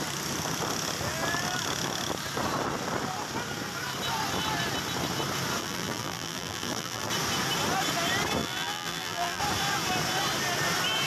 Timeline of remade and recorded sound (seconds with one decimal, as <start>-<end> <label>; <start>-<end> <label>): 0.0-5.6 recorded; 5.6-7.1 remade; 7.1-8.4 recorded; 8.4-9.4 remade; 9.4-11.1 recorded